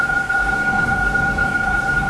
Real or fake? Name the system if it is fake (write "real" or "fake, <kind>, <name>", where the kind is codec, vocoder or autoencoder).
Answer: fake, codec, SNAC